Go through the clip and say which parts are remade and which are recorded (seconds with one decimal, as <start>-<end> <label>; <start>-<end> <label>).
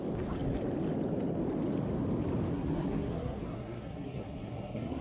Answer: 0.0-2.5 recorded; 2.5-5.0 remade